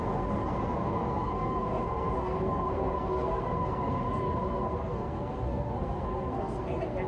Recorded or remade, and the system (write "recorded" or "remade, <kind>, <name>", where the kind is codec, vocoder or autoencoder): remade, codec, SNAC